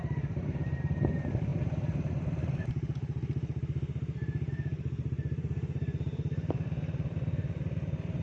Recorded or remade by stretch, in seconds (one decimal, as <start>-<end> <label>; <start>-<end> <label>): 0.0-8.2 remade